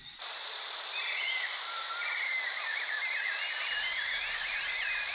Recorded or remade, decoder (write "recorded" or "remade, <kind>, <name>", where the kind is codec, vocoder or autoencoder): remade, vocoder, BigVGAN v2